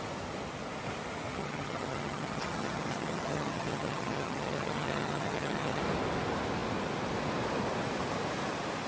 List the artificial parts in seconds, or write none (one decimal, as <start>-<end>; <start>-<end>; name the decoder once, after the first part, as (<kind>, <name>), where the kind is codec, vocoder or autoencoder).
1.3-5.8 (vocoder, HiFi-GAN)